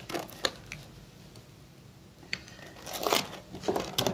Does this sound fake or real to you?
real